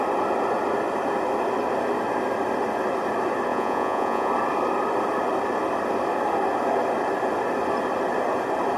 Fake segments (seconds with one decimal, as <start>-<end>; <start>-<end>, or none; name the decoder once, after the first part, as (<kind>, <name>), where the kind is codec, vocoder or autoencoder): 3.5-4.3 (vocoder, Vocos)